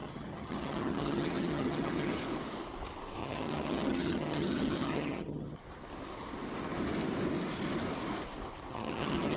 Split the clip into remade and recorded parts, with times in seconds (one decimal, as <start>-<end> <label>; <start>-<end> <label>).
0.0-2.1 remade; 2.1-3.2 recorded; 3.2-5.6 remade; 5.6-8.7 recorded; 8.7-9.4 remade